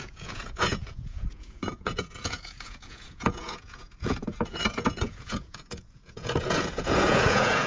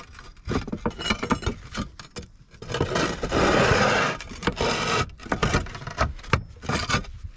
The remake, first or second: first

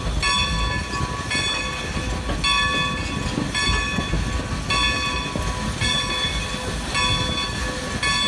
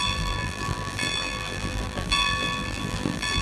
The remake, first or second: second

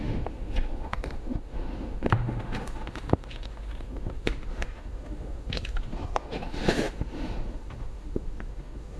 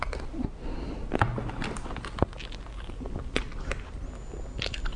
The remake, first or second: first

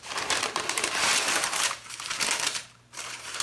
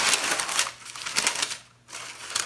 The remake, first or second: first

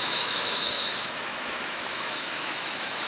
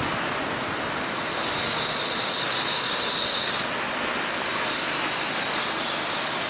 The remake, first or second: first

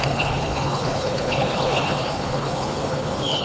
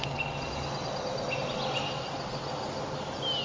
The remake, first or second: first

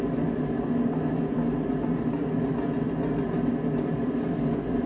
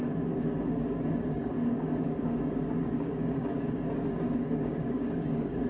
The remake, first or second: second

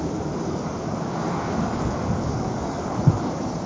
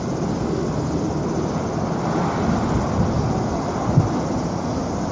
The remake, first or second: first